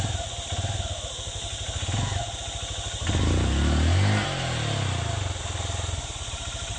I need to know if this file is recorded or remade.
recorded